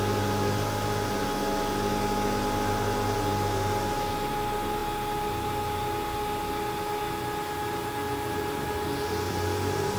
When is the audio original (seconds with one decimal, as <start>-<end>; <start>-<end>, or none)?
0.0-10.0